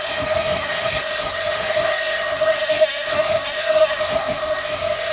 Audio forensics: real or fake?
fake